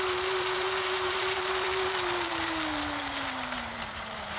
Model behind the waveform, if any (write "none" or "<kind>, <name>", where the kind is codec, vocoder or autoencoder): vocoder, BigVGAN v2